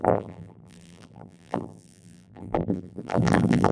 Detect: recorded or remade remade